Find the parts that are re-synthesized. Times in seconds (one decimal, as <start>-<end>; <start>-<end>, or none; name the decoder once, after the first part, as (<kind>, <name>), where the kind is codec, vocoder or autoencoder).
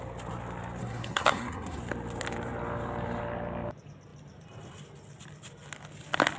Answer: 0.8-1.8 (codec, SNAC)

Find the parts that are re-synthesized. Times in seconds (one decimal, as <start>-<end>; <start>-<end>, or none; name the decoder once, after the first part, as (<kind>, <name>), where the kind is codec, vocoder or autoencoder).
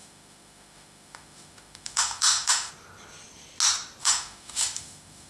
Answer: 0.0-2.7 (autoencoder, DAC-VAE); 4.0-5.3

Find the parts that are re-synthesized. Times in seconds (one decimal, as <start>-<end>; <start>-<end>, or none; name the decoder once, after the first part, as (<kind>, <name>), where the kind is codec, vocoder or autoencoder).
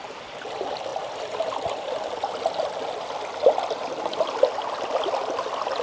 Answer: none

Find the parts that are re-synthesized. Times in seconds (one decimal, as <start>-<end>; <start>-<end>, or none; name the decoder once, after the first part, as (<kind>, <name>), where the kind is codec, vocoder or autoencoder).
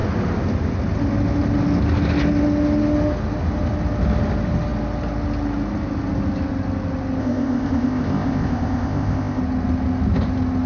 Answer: 7.2-9.4 (codec, ZipCodec)